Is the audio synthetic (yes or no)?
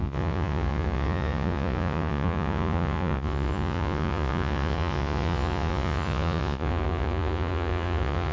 yes